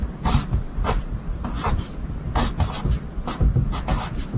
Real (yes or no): yes